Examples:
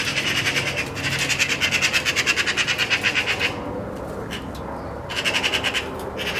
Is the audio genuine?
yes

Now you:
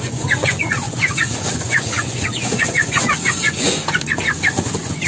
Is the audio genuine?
no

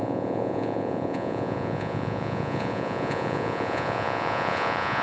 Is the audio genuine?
no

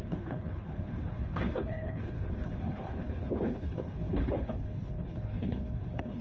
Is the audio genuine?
no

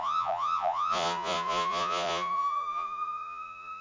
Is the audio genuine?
no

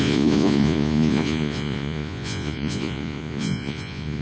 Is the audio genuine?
no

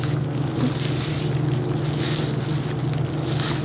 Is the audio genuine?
yes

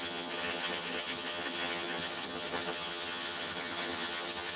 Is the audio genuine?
no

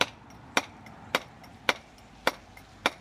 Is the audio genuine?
no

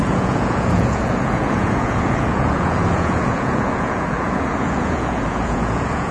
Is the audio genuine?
no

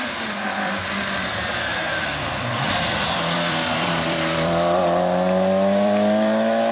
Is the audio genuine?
no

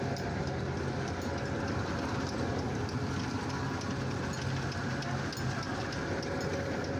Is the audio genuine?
yes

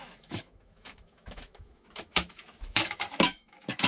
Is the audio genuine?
no